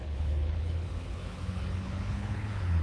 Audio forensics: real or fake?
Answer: fake